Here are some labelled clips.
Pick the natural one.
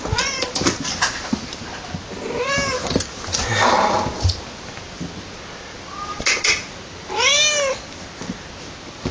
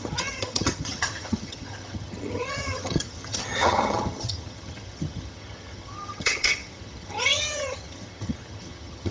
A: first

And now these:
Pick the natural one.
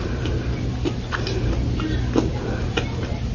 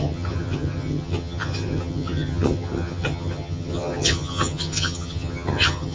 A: first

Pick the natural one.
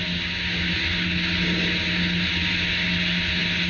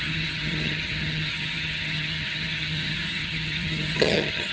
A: first